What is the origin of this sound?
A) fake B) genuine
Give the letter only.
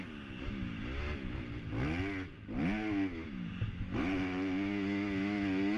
B